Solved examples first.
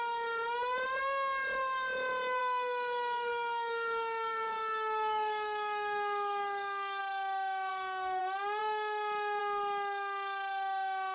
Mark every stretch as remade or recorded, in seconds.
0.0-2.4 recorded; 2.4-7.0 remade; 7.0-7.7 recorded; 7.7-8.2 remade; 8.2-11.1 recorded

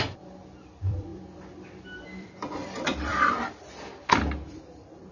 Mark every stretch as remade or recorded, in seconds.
0.0-5.1 remade

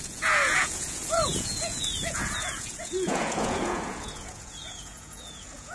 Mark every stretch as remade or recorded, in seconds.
0.0-5.7 remade

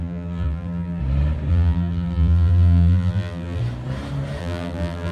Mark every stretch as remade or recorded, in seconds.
0.0-1.0 remade; 1.0-1.5 recorded; 1.5-3.6 remade; 3.6-4.4 recorded; 4.4-5.1 remade